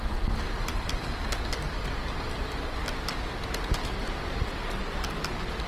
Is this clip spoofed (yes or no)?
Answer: no